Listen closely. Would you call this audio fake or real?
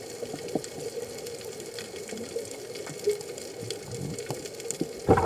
real